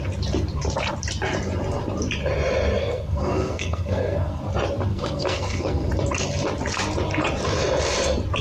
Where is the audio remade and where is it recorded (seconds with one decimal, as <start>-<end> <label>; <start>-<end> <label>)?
0.0-2.8 recorded; 2.8-4.4 remade; 4.4-4.9 recorded; 4.9-5.9 remade; 5.9-8.4 recorded